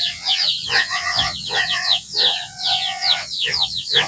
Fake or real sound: fake